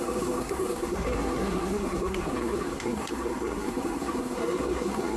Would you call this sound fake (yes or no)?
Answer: yes